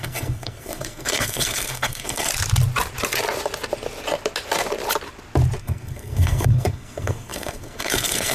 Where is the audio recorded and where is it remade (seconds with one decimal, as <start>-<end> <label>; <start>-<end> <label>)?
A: 0.0-2.3 remade; 2.3-5.6 recorded; 5.6-8.3 remade